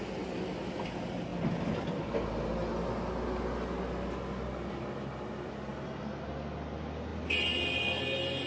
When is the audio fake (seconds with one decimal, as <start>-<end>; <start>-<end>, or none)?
none